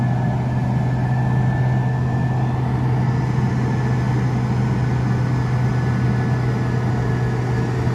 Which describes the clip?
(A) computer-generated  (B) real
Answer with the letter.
B